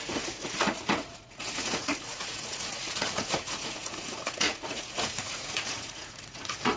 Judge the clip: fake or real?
fake